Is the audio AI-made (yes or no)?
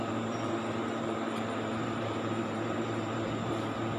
yes